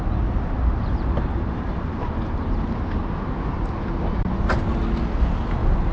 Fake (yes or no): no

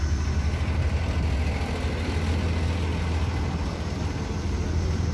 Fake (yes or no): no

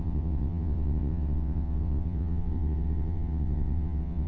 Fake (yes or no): yes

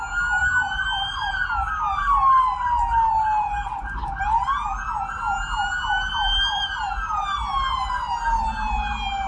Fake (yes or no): no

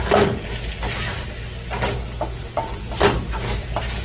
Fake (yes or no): no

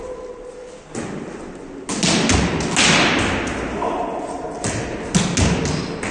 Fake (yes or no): no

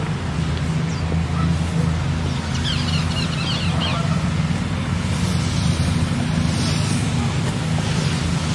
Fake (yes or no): no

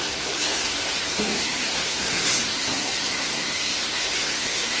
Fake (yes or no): yes